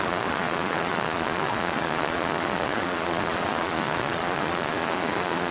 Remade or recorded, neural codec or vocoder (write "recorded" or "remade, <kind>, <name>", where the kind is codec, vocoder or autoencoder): remade, vocoder, Vocos